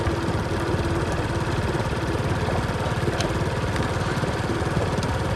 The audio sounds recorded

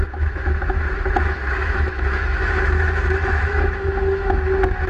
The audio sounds remade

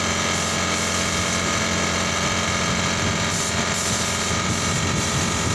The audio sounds recorded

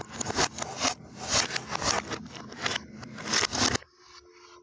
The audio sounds recorded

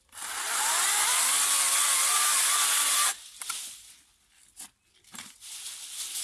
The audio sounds recorded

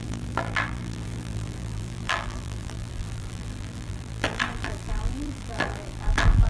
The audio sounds remade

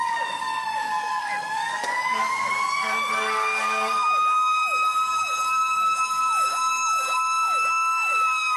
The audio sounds remade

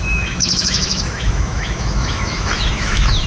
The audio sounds remade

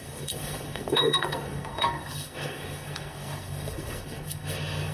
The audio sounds remade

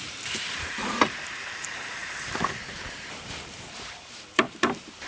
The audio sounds remade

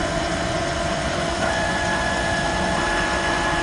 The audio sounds remade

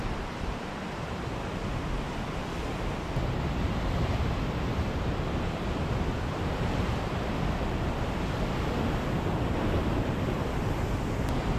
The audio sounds recorded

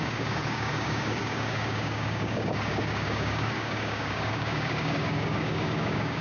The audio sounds remade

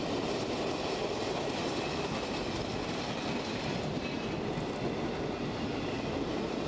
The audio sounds recorded